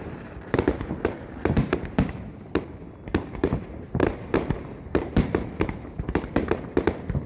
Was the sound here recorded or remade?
remade